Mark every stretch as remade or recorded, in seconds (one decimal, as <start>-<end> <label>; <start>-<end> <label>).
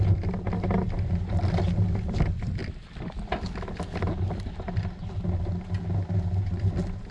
0.0-7.1 recorded